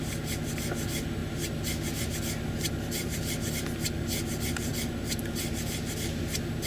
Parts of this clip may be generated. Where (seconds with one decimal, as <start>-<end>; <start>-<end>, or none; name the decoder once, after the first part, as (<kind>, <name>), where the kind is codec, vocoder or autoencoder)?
1.2-3.5 (vocoder, BigVGAN v2)